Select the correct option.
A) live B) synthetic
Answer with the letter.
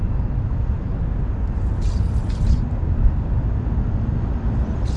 A